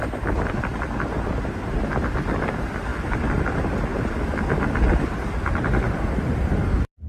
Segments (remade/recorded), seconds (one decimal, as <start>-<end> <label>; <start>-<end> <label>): 0.0-2.9 recorded; 2.9-3.4 remade; 3.4-3.9 recorded; 3.9-6.5 remade; 6.5-7.1 recorded